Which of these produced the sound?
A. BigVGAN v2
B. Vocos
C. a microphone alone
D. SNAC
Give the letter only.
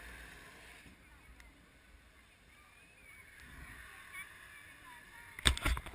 C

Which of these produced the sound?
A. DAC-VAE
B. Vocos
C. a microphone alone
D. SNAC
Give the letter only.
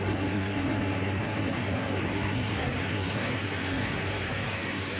D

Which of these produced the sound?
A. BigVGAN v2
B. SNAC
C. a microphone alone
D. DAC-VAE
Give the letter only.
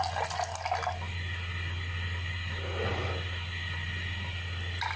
C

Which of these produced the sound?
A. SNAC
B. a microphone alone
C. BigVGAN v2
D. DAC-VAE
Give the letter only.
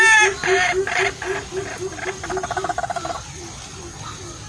B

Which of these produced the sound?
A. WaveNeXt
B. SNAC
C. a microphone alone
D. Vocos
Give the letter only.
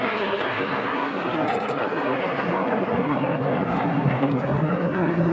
B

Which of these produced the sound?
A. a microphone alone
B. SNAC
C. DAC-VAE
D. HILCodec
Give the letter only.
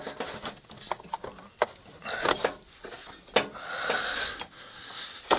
A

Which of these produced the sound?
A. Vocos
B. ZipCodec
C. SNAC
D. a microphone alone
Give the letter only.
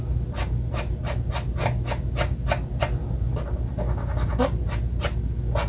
D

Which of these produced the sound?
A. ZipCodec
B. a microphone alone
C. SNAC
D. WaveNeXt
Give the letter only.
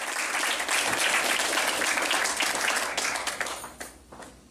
B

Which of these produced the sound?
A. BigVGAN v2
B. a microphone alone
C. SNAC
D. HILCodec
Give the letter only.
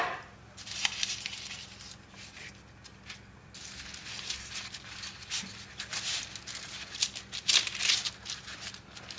B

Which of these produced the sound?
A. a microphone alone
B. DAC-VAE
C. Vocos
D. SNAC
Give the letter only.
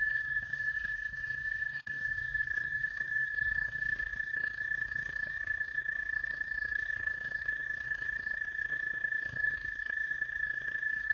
D